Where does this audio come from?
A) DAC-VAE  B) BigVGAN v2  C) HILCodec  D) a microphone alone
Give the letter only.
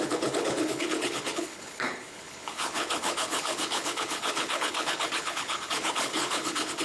C